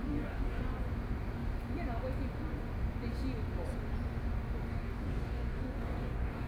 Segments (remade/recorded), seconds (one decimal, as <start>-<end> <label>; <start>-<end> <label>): 0.0-0.6 remade; 0.6-4.7 recorded; 4.7-6.5 remade